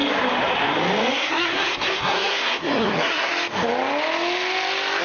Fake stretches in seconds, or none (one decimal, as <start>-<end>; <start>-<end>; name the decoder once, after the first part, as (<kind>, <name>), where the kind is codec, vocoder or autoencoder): 1.1-3.3 (codec, SNAC)